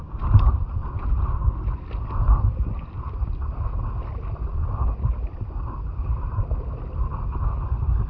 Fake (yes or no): no